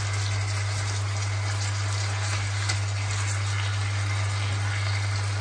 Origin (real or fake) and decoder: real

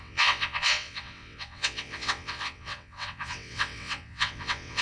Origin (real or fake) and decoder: fake, vocoder, WaveNeXt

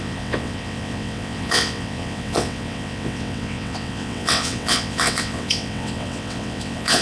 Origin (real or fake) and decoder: fake, vocoder, WaveNeXt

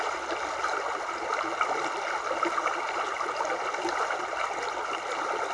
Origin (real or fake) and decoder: real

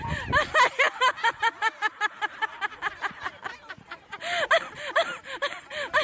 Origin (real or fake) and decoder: real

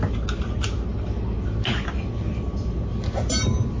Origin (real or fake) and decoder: real